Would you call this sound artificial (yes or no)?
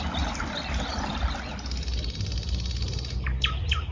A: no